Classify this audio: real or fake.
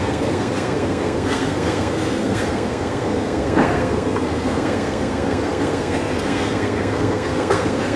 fake